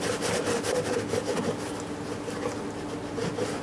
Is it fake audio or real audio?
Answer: real